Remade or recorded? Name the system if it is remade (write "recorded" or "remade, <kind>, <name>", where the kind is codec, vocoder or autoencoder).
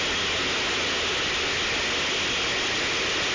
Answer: recorded